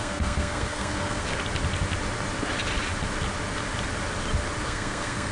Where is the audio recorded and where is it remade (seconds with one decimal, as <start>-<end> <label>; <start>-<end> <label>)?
0.0-1.4 remade; 1.4-4.6 recorded; 4.6-5.3 remade